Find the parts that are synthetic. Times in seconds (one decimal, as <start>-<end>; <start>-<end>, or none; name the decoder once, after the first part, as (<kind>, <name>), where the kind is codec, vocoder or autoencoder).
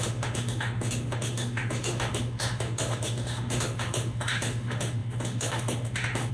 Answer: 0.0-6.3 (autoencoder, DAC-VAE)